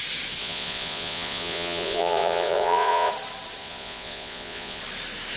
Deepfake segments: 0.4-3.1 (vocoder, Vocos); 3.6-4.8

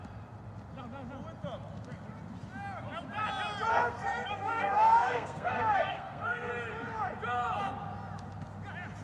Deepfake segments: 3.7-6.5 (codec, SNAC)

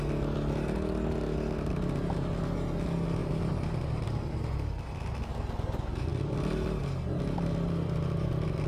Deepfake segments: 3.2-4.2 (vocoder, BigVGAN v2)

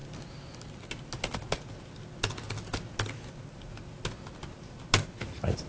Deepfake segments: none

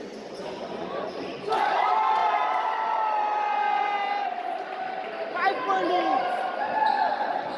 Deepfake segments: 0.0-2.2 (vocoder, Vocos); 6.6-7.6